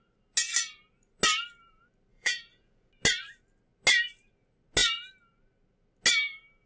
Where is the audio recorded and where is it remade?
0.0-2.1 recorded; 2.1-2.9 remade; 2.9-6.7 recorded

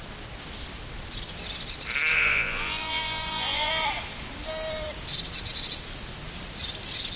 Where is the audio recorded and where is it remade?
0.0-2.1 recorded; 2.1-3.7 remade; 3.7-7.2 recorded